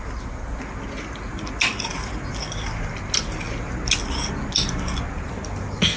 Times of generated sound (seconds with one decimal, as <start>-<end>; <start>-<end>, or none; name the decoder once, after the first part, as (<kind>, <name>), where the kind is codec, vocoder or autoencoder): none